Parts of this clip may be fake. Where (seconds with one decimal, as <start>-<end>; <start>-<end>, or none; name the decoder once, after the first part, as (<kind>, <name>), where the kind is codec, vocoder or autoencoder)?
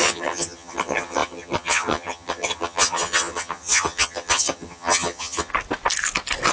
0.0-5.5 (vocoder, HiFi-GAN)